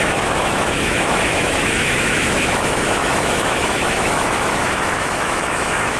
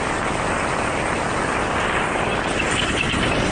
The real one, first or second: second